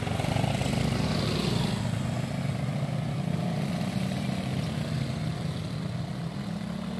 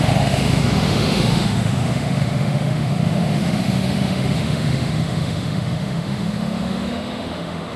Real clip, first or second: first